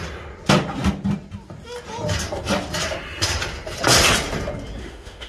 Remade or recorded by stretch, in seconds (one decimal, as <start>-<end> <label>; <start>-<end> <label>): 0.0-4.8 recorded; 4.8-5.3 remade